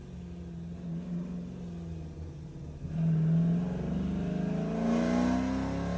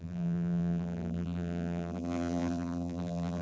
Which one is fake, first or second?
second